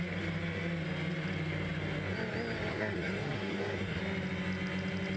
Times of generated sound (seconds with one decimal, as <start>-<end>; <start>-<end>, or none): 2.7-4.0